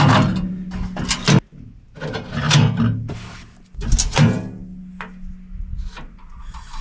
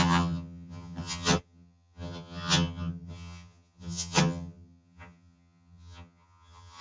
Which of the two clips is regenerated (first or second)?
second